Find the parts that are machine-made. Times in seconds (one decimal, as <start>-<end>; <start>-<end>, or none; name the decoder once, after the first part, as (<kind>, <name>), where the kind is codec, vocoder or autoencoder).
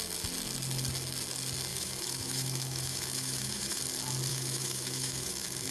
1.7-3.8 (autoencoder, DAC-VAE); 4.3-5.7